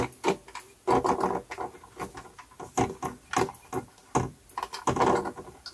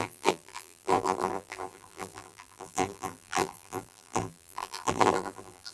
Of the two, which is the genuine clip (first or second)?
first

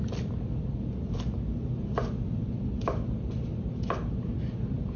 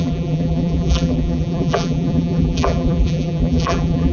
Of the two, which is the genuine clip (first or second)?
first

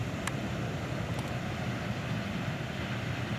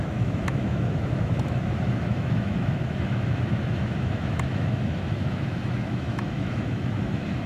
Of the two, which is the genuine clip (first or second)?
first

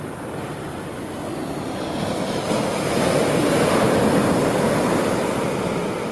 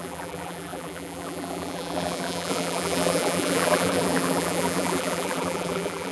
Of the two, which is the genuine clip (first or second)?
first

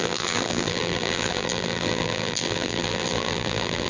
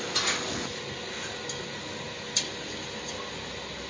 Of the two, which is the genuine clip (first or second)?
second